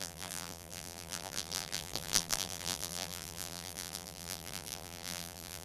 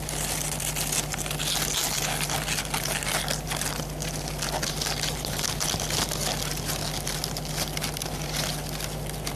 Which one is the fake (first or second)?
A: first